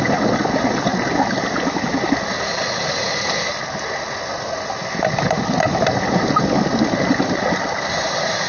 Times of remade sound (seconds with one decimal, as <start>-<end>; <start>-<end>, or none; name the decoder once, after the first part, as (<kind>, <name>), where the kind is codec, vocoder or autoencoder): none